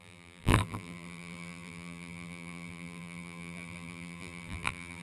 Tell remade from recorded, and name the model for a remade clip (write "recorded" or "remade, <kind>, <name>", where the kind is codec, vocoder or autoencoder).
remade, vocoder, BigVGAN v2